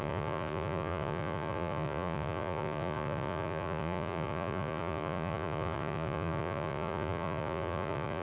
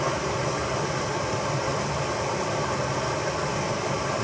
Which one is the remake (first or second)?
first